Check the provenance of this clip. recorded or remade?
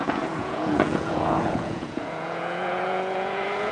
remade